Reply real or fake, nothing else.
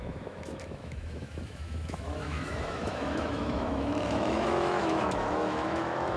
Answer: fake